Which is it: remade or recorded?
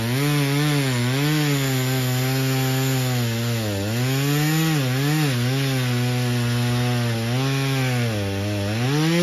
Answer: recorded